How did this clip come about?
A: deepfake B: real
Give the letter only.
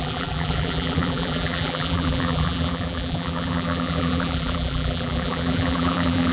A